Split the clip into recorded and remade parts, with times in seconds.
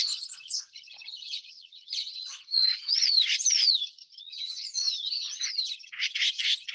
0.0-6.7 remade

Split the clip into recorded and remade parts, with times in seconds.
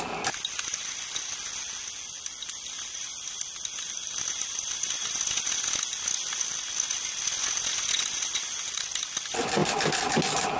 0.0-10.6 recorded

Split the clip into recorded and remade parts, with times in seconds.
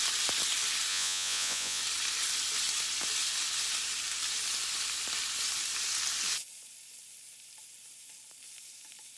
0.0-0.9 recorded; 0.9-1.8 remade; 1.8-9.2 recorded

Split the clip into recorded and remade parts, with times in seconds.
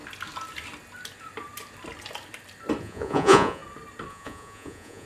0.0-2.8 recorded; 2.8-3.6 remade; 3.6-4.1 recorded; 4.1-5.1 remade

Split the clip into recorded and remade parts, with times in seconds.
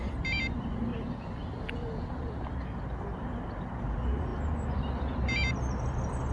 0.0-6.3 recorded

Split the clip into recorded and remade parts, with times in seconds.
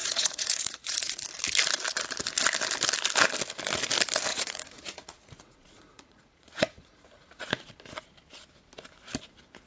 0.0-1.2 remade; 1.2-4.3 recorded; 4.3-7.7 remade; 7.7-9.7 recorded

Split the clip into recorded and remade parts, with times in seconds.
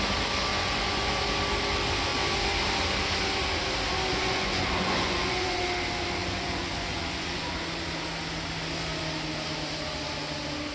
0.0-0.5 recorded; 0.5-1.2 remade; 1.2-4.1 recorded; 4.1-5.6 remade; 5.6-6.2 recorded; 6.2-7.5 remade; 7.5-10.7 recorded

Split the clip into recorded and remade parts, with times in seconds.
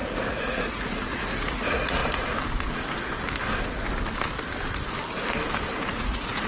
0.0-2.0 remade; 2.0-5.9 recorded; 5.9-6.5 remade